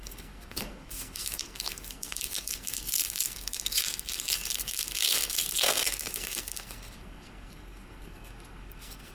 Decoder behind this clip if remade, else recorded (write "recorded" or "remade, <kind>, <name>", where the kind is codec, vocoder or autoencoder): remade, codec, SNAC